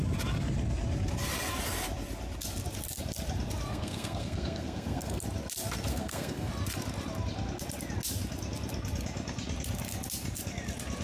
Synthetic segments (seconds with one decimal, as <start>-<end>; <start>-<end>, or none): 3.7-5.2; 5.9-6.5